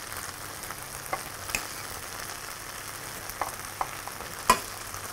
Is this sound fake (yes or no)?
no